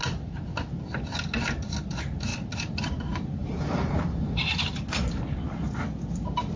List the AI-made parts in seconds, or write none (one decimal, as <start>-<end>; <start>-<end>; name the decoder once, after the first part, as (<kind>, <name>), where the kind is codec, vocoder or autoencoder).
3.4-4.8 (vocoder, BigVGAN v2)